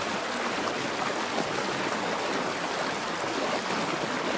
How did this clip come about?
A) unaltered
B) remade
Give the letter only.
A